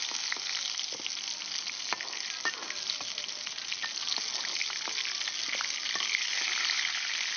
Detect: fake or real real